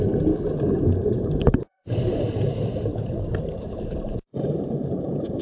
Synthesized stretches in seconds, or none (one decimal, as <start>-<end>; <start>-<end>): 1.0-2.1; 2.9-4.8